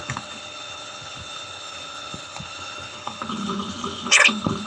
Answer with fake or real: fake